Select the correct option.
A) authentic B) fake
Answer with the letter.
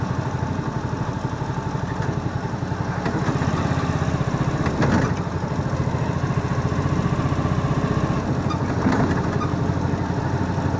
A